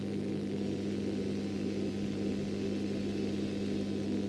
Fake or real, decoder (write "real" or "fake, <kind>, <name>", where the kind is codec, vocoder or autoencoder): real